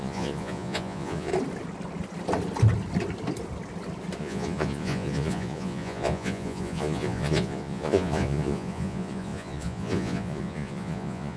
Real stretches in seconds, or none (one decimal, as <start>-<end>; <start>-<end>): 1.3-4.2